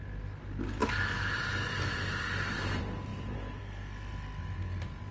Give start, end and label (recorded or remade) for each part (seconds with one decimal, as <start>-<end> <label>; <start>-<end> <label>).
0.0-3.1 recorded; 3.1-3.6 remade; 3.6-5.1 recorded